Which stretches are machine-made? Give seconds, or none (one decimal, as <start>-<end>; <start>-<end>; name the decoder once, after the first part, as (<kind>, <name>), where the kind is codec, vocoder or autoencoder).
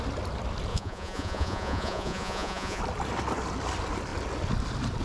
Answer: 0.7-2.8 (vocoder, Vocos)